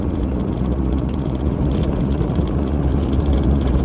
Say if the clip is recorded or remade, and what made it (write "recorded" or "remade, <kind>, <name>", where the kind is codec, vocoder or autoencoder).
remade, vocoder, Vocos